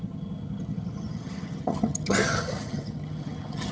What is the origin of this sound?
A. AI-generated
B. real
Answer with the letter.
A